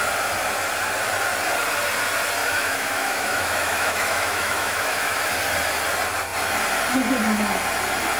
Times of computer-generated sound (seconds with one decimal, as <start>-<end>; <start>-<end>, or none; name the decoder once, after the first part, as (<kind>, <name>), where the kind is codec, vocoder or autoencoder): 2.4-5.2 (autoencoder, DAC-VAE)